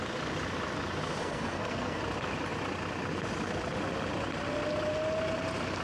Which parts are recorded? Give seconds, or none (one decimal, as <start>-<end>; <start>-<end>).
0.0-1.2; 2.0-5.8